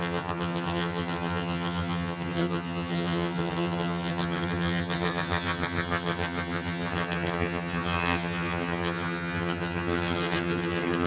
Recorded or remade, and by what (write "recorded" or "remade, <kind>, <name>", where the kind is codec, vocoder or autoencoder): remade, vocoder, HiFi-GAN